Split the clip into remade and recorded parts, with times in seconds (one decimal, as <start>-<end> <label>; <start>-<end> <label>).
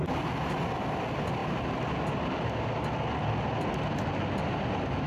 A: 0.0-5.1 recorded